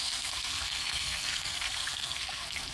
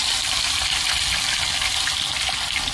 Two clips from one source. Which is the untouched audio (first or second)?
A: second